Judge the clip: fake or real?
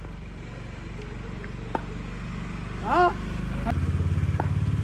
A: real